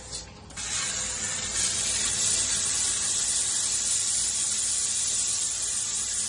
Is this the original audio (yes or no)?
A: no